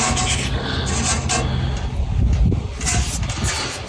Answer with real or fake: real